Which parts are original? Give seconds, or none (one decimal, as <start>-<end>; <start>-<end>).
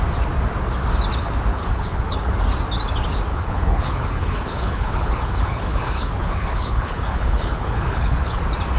0.0-1.5; 2.3-3.3; 8.4-8.8